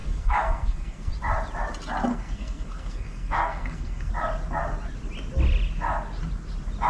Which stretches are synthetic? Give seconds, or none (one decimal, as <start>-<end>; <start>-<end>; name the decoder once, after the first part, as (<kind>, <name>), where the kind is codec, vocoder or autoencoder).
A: 0.0-1.1 (codec, SNAC); 2.1-4.1